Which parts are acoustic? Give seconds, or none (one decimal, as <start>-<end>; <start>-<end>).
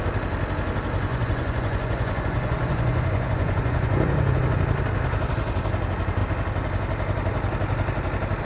0.0-1.1; 4.4-8.4